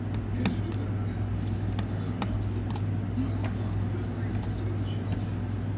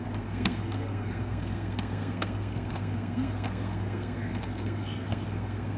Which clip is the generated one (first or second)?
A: second